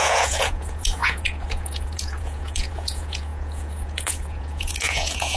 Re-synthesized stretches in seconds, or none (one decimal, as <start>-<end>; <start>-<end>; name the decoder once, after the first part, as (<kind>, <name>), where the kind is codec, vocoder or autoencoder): 0.0-5.4 (vocoder, Vocos)